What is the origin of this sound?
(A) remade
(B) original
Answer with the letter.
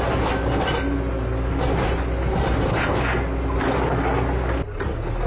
B